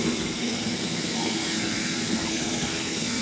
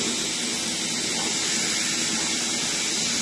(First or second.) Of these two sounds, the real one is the second